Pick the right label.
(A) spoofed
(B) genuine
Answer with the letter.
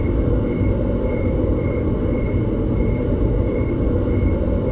B